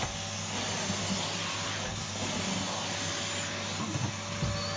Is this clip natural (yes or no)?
yes